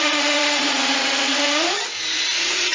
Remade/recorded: remade